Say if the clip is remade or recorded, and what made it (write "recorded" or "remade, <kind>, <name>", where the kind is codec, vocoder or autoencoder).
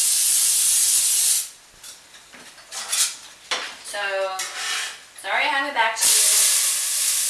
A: recorded